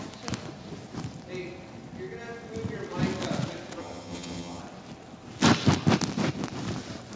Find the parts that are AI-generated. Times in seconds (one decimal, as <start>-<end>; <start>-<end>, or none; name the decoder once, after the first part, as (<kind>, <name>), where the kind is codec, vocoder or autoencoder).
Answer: 3.8-4.6 (vocoder, HiFi-GAN)